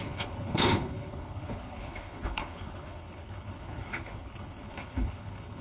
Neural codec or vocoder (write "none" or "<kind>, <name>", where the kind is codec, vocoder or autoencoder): codec, HILCodec